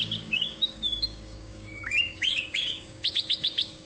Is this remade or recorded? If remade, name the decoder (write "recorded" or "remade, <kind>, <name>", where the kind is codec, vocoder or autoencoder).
remade, codec, DAC